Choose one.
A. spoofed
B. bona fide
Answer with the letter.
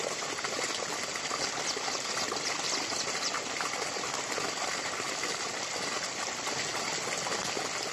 B